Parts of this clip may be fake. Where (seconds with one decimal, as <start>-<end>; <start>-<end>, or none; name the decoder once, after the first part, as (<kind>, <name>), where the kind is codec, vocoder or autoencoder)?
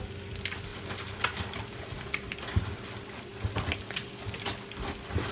0.7-1.2 (vocoder, BigVGAN v2)